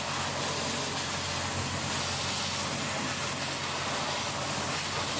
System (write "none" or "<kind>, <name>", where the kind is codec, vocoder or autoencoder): none